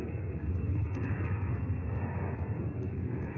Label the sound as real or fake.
fake